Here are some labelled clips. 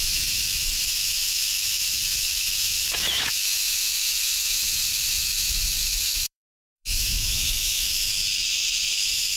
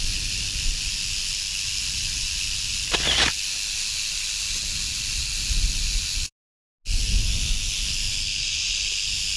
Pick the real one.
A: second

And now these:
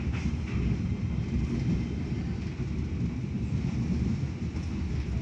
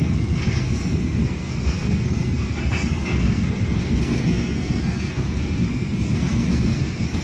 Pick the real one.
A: first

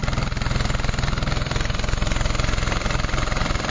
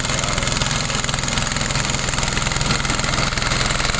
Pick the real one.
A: second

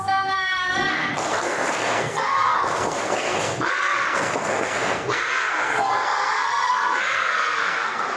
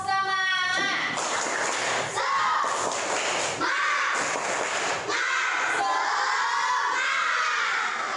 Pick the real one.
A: second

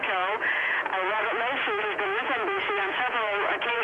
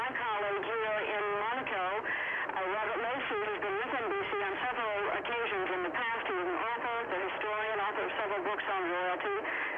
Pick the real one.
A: second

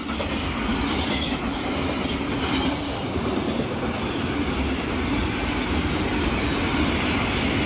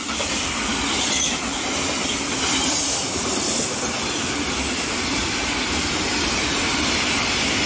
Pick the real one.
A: first